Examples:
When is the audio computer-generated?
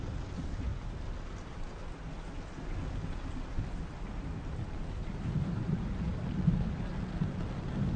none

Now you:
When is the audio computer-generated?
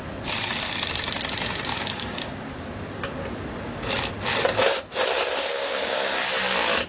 1.7-2.4 (codec, DAC); 5.5-6.2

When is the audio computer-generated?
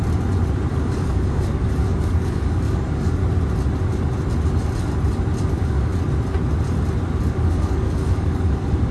0.7-3.2 (codec, DAC); 5.5-5.9; 7.3-8.9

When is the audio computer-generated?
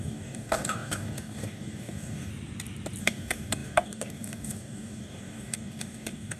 0.0-2.3 (codec, DAC); 3.0-6.4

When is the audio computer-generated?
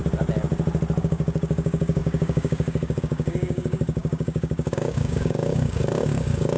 1.0-6.6 (codec, DAC)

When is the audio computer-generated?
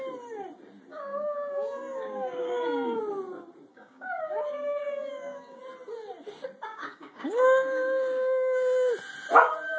0.9-3.0 (codec, DAC); 3.7-5.6; 6.7-8.9